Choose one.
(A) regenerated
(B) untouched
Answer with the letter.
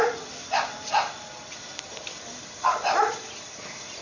A